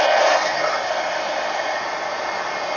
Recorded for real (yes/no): yes